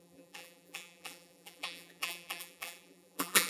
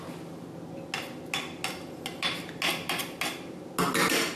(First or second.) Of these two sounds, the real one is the second